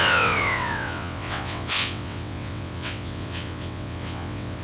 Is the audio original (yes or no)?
no